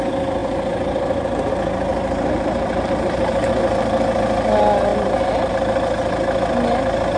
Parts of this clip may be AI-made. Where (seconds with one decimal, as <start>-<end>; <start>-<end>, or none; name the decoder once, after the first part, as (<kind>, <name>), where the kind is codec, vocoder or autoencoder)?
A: 1.9-3.5 (vocoder, BigVGAN v2); 4.9-5.5